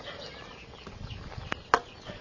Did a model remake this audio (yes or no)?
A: no